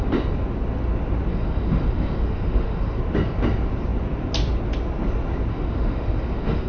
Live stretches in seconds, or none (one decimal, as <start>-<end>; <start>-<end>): 0.0-1.3; 3.0-5.5